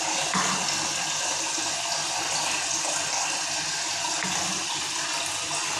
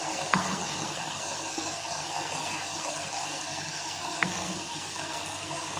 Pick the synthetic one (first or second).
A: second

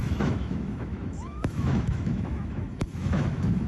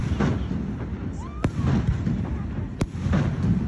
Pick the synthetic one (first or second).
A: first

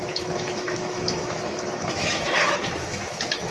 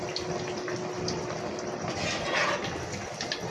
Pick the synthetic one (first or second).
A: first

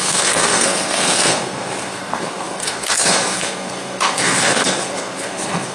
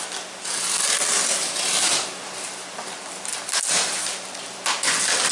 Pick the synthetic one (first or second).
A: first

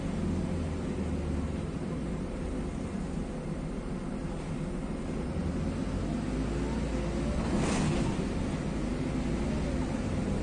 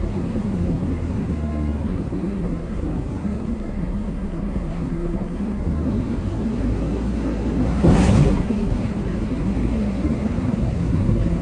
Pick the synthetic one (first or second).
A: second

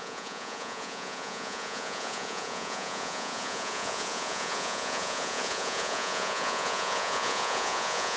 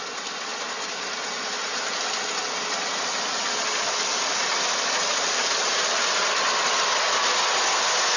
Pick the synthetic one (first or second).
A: first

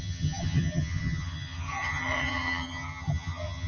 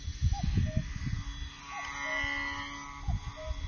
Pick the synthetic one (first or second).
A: first